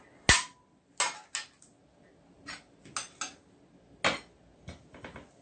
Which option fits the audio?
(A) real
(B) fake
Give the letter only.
A